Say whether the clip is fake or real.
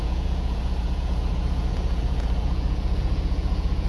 fake